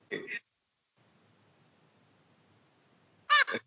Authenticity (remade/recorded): recorded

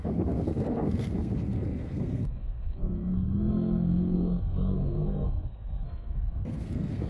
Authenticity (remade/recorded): remade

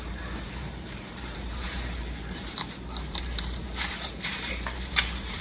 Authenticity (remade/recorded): remade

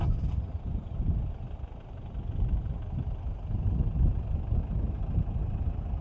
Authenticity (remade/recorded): recorded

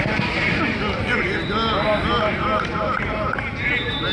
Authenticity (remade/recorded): recorded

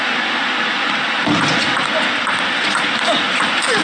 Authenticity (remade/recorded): recorded